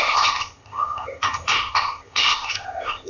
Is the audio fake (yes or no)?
yes